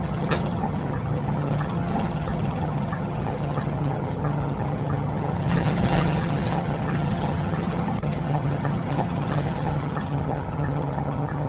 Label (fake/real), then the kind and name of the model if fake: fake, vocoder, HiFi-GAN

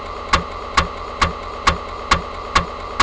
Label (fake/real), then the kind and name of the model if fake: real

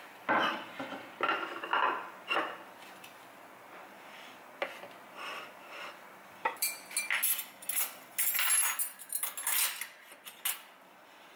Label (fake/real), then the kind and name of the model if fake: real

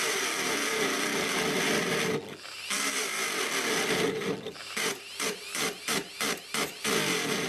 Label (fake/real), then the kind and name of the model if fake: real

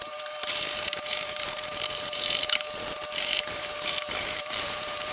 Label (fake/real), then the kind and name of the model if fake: fake, vocoder, BigVGAN v2